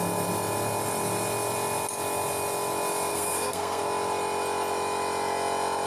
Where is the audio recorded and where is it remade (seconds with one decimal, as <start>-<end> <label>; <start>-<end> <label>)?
0.0-3.1 recorded; 3.1-3.8 remade; 3.8-5.9 recorded